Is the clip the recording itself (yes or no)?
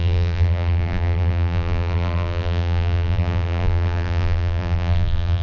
no